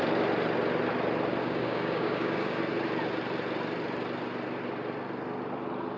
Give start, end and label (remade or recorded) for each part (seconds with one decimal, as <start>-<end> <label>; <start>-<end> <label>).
0.0-1.4 recorded; 1.4-2.6 remade; 2.6-6.0 recorded